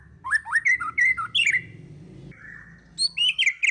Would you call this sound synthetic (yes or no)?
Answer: no